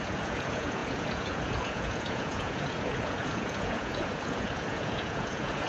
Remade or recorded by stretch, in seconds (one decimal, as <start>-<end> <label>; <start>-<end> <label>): 0.0-5.7 remade